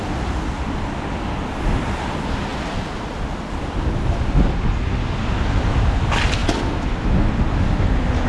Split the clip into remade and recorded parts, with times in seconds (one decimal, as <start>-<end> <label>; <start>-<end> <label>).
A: 0.0-8.3 recorded